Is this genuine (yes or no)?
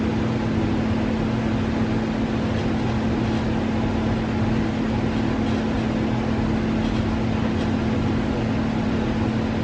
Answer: yes